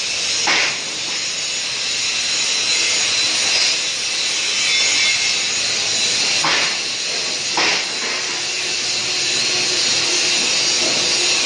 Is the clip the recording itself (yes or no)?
yes